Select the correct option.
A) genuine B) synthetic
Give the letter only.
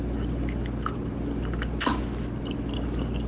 A